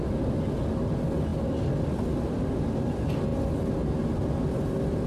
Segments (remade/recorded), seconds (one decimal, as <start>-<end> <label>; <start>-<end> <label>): 0.0-5.1 recorded